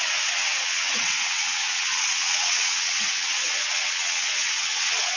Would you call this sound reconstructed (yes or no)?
yes